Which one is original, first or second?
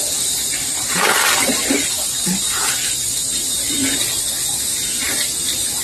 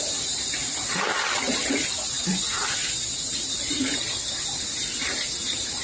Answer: first